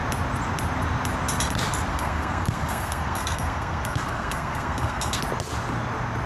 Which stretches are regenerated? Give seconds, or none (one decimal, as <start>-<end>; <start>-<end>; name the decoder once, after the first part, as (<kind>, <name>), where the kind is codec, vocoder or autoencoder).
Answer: 1.9-5.2 (codec, SNAC)